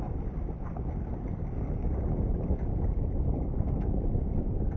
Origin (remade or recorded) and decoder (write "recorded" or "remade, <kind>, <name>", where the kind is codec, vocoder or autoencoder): recorded